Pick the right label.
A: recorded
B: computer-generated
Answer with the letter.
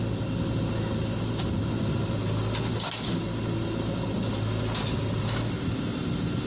A